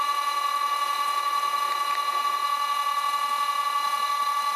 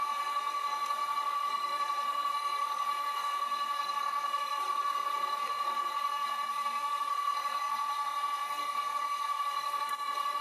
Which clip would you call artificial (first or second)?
second